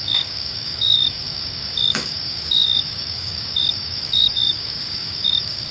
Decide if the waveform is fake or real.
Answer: fake